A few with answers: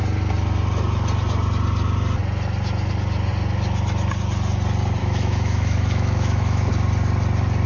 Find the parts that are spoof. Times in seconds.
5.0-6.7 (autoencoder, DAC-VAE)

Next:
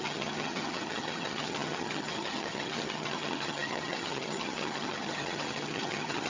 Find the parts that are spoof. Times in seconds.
0.0-6.3 (vocoder, HiFi-GAN)

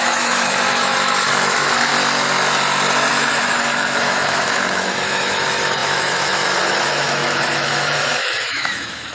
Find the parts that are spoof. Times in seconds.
0.0-1.9 (autoencoder, DAC-VAE); 3.1-9.1

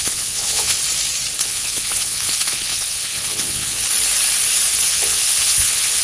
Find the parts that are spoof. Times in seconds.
0.0-0.8 (vocoder, Vocos); 1.4-3.8; 4.9-6.0